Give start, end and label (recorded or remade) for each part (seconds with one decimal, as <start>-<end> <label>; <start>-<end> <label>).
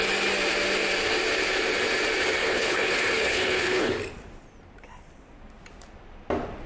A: 0.0-2.4 recorded; 2.4-3.9 remade; 3.9-6.7 recorded